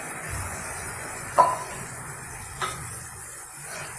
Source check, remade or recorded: remade